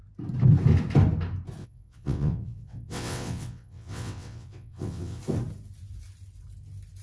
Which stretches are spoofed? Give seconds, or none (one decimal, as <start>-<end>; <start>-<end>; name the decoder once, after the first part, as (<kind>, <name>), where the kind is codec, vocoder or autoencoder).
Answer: 1.6-5.2 (vocoder, WaveNeXt)